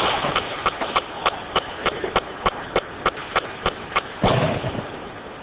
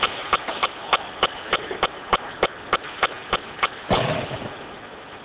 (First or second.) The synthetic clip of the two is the first